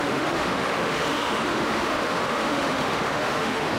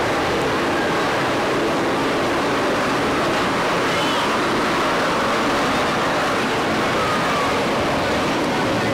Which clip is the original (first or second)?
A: second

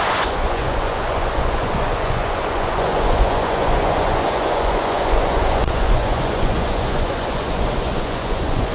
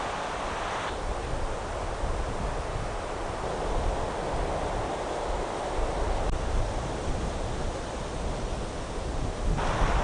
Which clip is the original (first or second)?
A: second